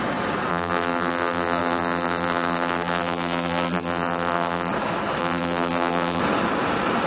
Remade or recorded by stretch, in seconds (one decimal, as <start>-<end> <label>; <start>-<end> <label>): 0.0-0.5 recorded; 0.5-4.7 remade; 4.7-5.2 recorded; 5.2-6.2 remade; 6.2-7.1 recorded